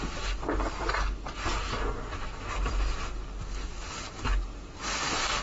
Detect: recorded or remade recorded